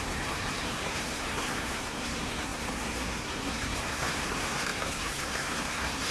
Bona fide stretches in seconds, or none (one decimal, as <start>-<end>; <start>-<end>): none